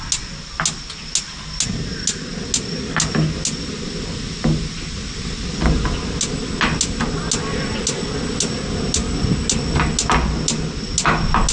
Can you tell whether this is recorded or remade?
recorded